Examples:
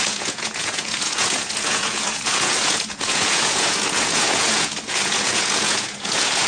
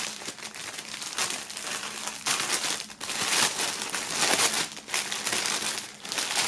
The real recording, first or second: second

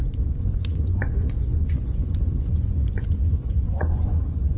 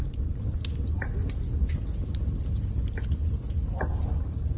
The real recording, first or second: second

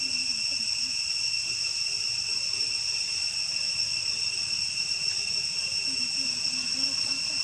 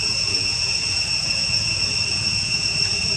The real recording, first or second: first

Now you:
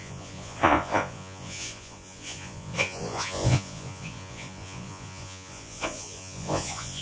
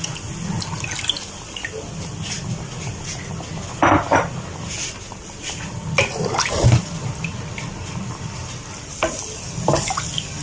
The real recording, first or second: second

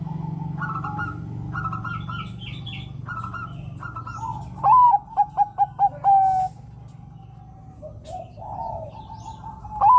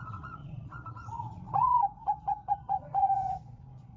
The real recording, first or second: first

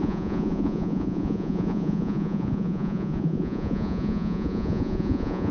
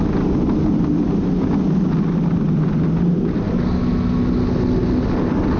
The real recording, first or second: second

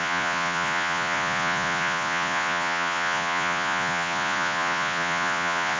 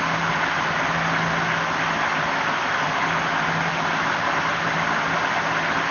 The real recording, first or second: second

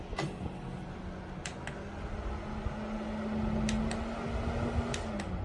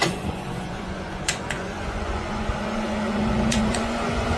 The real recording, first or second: first